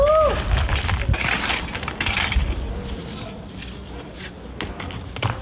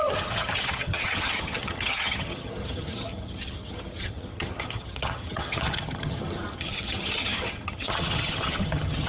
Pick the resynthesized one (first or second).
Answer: second